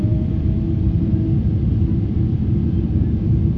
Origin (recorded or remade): recorded